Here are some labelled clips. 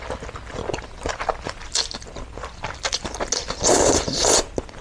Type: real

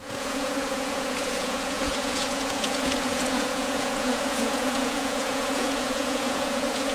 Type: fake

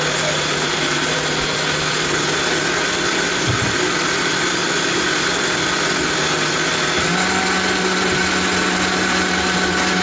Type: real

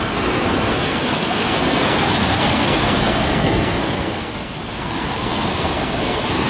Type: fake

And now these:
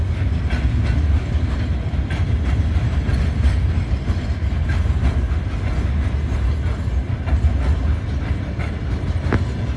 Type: real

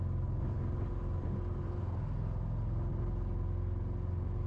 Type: real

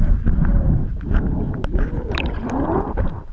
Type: fake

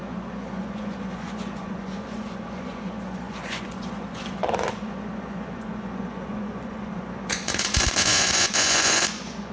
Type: fake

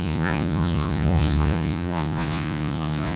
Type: fake